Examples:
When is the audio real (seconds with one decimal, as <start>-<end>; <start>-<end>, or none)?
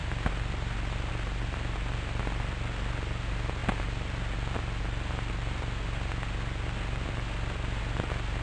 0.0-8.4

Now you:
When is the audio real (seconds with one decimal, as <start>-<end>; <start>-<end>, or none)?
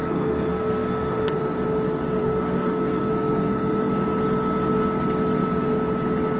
1.4-2.2; 3.9-6.4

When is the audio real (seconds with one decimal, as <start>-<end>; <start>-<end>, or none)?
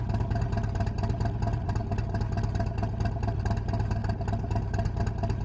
0.0-5.4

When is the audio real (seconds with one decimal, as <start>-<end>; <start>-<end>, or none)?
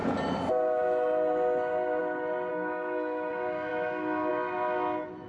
0.0-2.5; 3.3-5.3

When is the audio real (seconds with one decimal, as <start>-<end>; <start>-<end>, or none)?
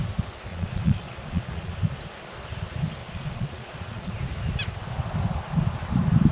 0.0-0.5; 1.7-3.0; 4.1-6.3